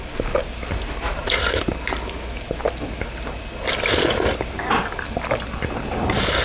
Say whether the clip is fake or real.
real